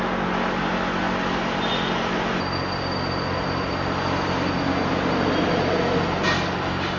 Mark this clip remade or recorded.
recorded